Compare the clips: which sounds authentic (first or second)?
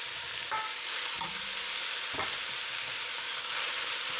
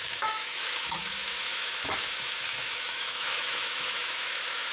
first